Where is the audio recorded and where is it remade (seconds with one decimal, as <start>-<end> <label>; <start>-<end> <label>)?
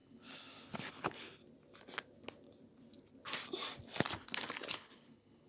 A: 0.0-1.4 remade; 1.4-4.7 recorded; 4.7-5.5 remade